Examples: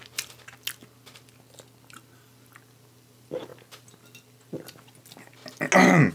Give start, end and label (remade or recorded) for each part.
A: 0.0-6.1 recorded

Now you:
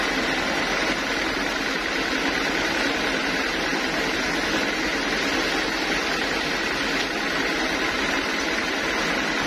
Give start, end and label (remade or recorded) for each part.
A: 0.0-9.5 recorded

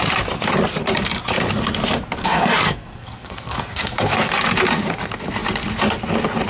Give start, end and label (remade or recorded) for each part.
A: 0.0-2.2 recorded; 2.2-4.3 remade; 4.3-6.5 recorded

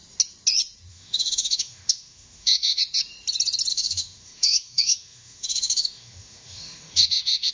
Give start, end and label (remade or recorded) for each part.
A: 0.0-0.9 recorded; 0.9-2.8 remade; 2.8-3.7 recorded; 3.7-7.5 remade